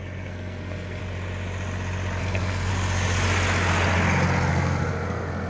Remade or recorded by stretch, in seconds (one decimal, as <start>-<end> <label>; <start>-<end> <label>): 0.0-1.0 remade; 1.0-2.2 recorded; 2.2-2.7 remade; 2.7-4.5 recorded; 4.5-5.5 remade